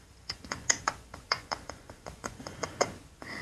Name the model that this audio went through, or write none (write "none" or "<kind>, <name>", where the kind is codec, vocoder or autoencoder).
vocoder, Vocos